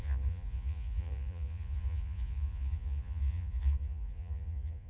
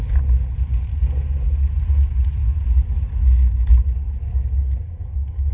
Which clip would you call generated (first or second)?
first